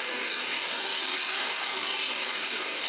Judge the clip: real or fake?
fake